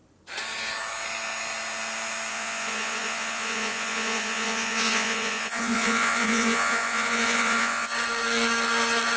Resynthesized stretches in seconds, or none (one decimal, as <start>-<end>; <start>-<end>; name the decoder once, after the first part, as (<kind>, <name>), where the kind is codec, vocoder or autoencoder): 2.3-7.9 (vocoder, Vocos)